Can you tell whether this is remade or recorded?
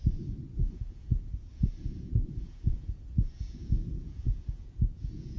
remade